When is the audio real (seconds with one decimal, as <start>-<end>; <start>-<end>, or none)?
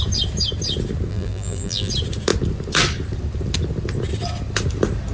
0.0-1.1; 1.9-5.1